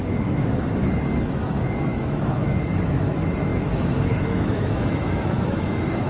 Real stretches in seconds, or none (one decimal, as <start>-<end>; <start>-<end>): none